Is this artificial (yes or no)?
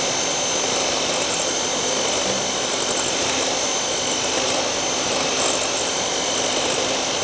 no